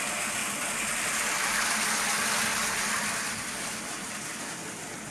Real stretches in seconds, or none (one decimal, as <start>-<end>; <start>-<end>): 0.0-5.1